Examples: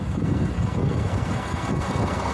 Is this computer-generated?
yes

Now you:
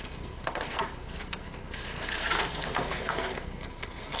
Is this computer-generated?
yes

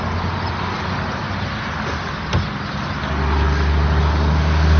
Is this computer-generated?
no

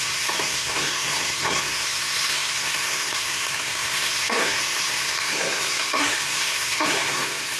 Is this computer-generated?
yes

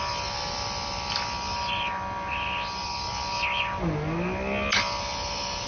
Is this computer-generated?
no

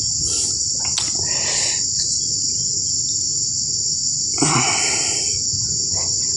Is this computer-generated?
no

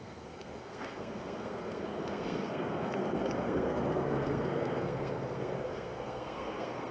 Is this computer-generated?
yes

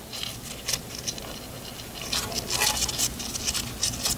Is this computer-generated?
no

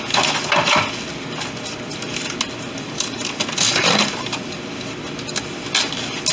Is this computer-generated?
no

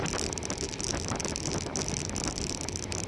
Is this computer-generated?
no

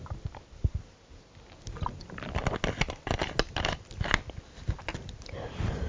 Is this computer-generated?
no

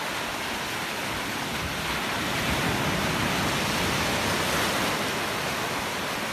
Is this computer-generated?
no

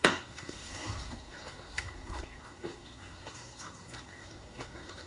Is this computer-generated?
yes